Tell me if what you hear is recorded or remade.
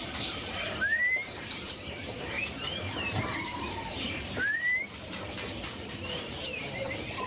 remade